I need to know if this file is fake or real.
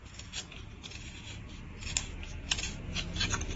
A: real